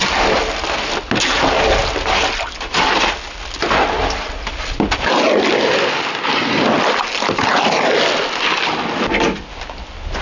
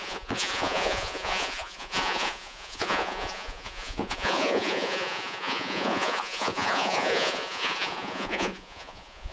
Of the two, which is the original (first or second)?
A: first